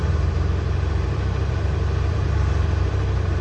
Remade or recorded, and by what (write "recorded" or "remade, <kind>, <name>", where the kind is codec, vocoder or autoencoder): remade, vocoder, BigVGAN v2